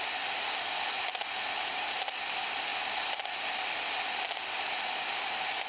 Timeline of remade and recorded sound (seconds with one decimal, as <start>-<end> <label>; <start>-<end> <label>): 0.0-5.7 recorded